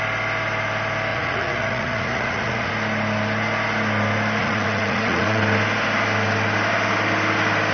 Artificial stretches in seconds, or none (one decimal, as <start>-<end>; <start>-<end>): 1.1-2.7; 4.4-5.4